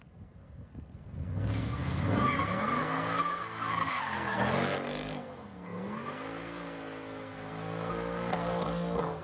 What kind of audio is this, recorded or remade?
remade